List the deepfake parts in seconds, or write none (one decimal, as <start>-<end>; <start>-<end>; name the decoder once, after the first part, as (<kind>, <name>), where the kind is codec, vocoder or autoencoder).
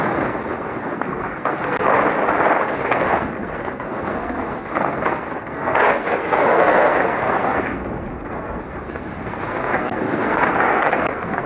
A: 0.0-1.9 (codec, SNAC); 2.6-11.5